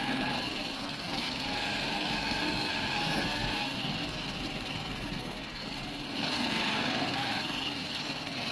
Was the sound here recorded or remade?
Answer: remade